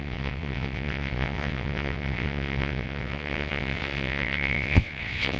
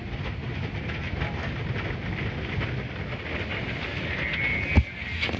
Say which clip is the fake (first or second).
first